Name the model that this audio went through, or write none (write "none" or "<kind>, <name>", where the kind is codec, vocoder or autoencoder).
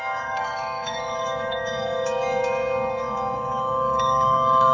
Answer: codec, DAC